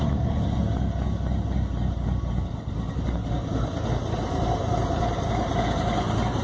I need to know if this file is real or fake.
real